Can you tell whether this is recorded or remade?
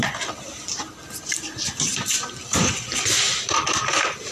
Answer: remade